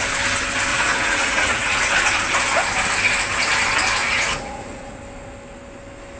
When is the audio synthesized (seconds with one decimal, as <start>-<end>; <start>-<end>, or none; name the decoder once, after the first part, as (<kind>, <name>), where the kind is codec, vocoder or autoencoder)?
0.7-1.9 (vocoder, Vocos); 4.0-5.0